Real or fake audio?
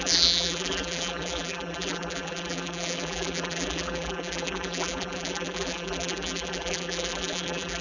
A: fake